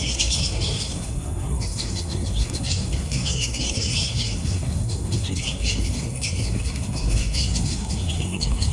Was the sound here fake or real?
fake